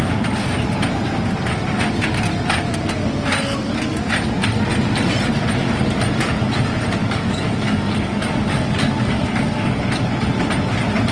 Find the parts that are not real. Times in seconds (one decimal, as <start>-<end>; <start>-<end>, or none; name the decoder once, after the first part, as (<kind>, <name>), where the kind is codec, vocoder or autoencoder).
7.0-9.8 (codec, DAC)